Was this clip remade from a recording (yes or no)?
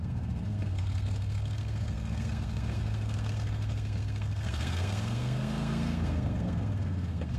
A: yes